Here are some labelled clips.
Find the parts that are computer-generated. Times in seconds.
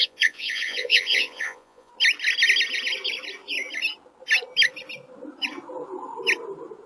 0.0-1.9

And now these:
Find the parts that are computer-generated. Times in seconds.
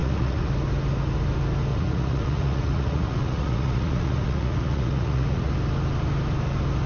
0.0-0.5; 1.7-5.5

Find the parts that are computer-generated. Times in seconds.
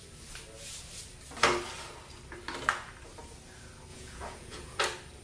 3.9-4.8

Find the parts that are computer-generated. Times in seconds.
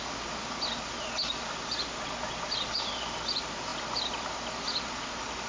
none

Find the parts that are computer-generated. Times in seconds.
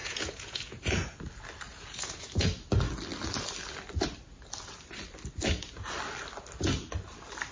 0.0-1.2; 1.7-2.5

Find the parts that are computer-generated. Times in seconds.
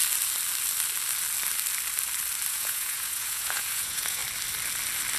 2.5-4.2